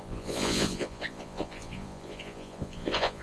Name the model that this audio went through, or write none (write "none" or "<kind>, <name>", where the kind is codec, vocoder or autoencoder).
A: vocoder, Vocos